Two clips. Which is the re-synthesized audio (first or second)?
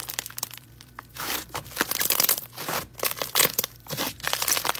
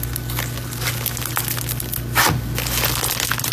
first